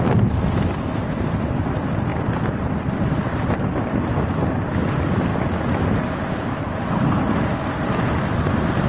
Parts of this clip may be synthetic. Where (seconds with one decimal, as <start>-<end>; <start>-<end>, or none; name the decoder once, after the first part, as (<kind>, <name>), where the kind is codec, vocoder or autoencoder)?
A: 2.1-4.1 (vocoder, BigVGAN v2)